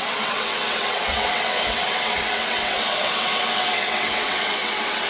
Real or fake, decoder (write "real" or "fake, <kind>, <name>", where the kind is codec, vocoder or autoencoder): fake, vocoder, WaveNeXt